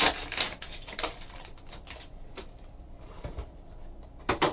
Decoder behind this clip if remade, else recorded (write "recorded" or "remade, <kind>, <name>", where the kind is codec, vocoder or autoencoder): recorded